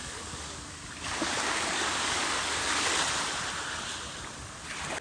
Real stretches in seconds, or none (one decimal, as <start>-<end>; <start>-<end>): 2.9-5.0

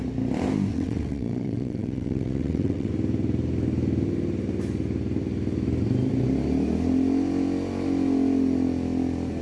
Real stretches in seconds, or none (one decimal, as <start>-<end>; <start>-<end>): 0.0-0.7; 2.9-9.4

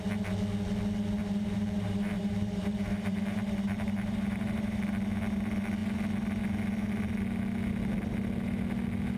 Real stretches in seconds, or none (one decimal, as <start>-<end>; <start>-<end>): 0.0-1.2; 4.9-9.2